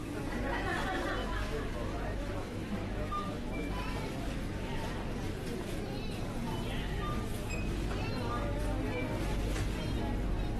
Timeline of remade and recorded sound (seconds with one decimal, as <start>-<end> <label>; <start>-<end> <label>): 0.0-1.2 recorded; 1.2-3.7 remade; 3.7-10.6 recorded